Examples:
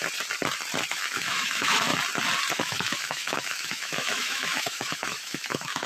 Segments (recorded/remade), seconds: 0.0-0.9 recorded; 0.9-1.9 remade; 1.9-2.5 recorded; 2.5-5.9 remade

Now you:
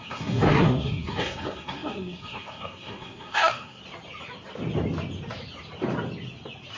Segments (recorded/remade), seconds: 0.0-3.8 remade; 3.8-6.8 recorded

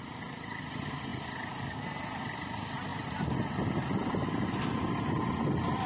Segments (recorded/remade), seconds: 0.0-5.9 recorded

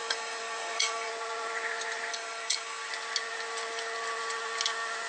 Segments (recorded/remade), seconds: 0.0-1.1 remade; 1.1-2.1 recorded; 2.1-2.9 remade; 2.9-5.1 recorded

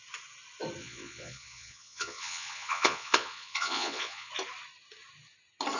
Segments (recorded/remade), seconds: 0.0-0.8 recorded; 0.8-4.3 remade; 4.3-5.8 recorded